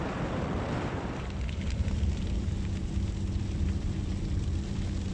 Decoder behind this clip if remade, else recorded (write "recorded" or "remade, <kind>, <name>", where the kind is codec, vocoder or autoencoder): remade, vocoder, BigVGAN v2